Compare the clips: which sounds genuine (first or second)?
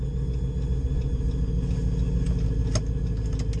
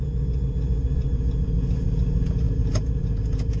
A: first